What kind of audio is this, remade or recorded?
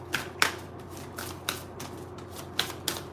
recorded